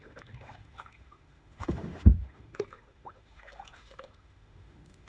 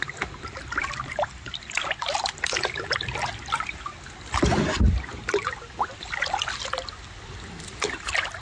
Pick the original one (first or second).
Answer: second